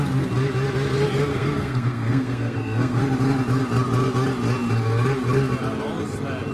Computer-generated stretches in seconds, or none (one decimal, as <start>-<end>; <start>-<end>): 1.3-3.0